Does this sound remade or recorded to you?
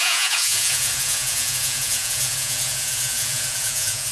remade